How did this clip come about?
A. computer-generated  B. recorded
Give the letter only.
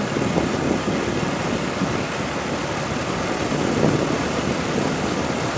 B